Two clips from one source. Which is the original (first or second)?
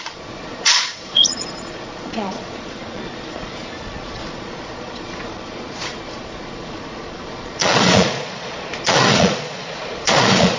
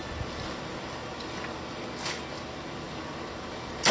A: second